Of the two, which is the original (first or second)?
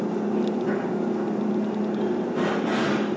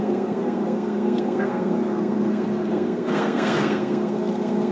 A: first